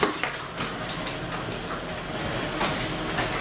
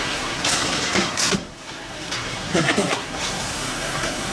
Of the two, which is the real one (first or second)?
first